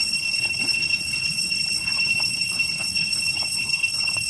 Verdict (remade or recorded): remade